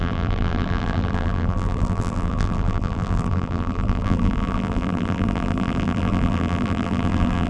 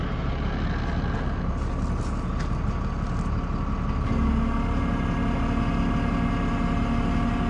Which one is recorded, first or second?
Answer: second